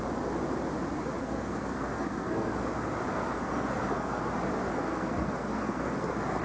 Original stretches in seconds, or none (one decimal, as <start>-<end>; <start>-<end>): 0.0-1.2; 2.5-3.1; 4.2-4.7